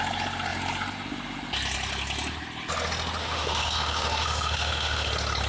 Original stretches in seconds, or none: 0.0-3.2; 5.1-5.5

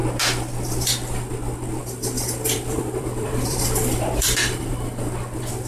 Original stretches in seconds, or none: 0.0-1.8; 4.7-5.7

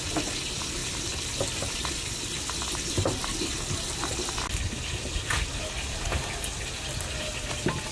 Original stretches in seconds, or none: 0.0-7.9

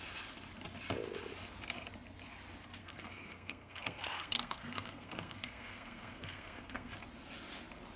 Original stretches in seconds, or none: 0.0-2.8; 6.9-8.0

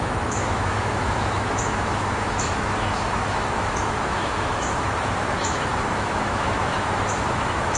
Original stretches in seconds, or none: none

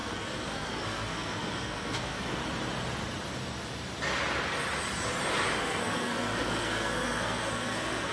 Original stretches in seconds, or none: 2.4-5.6

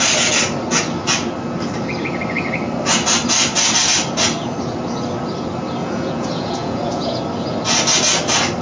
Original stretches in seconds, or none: 0.0-5.8; 7.2-8.6

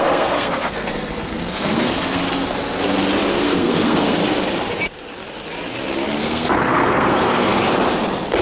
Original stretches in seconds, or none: 2.2-3.3; 4.2-6.2; 7.5-8.4